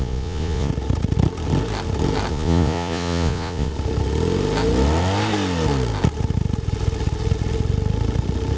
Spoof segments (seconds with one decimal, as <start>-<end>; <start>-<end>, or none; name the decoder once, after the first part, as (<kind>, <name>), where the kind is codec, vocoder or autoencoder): 0.0-0.7 (vocoder, Vocos); 2.3-3.7